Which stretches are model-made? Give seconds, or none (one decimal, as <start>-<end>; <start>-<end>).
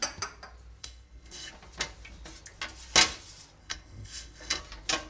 0.8-1.5; 3.6-4.6